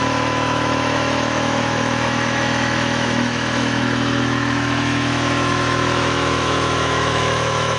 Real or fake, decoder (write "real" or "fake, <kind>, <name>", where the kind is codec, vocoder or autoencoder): fake, autoencoder, DAC-VAE